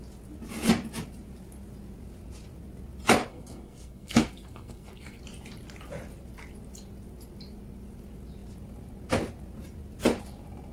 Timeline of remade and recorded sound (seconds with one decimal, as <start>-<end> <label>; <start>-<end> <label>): 0.0-3.3 recorded; 3.3-5.2 remade; 5.2-10.7 recorded